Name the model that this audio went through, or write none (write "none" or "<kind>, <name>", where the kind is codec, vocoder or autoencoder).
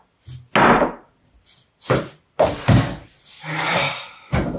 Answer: none